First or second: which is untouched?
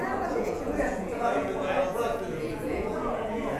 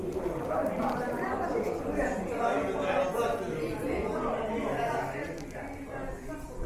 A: second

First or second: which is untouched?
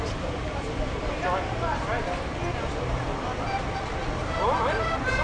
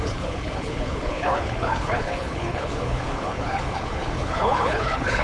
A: first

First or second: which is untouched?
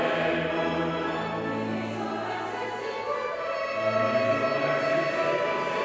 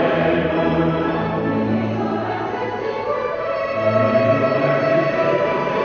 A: first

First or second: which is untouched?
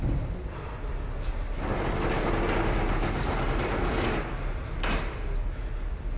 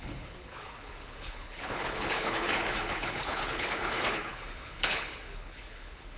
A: first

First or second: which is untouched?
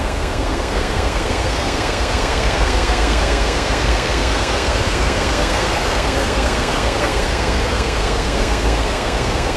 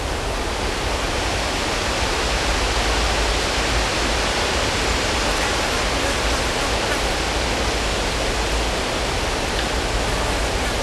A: second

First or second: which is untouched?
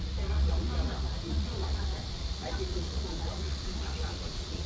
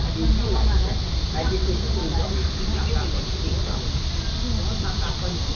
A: second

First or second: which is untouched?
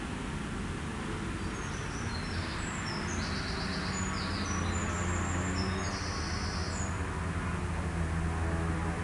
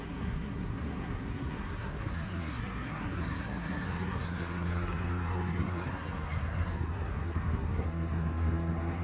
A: first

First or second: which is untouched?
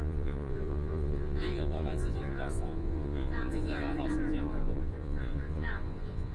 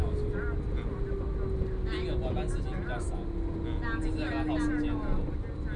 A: second